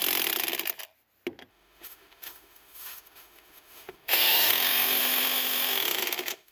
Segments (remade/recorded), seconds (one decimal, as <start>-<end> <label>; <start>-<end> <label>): 0.0-1.5 recorded; 1.5-6.5 remade